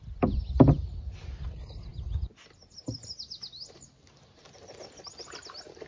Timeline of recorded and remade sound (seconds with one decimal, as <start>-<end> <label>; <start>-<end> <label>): 0.0-5.9 recorded